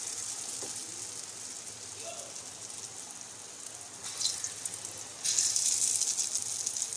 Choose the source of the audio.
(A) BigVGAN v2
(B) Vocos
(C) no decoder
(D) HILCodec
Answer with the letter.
C